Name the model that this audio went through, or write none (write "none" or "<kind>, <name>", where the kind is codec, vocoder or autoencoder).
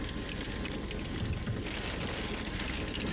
none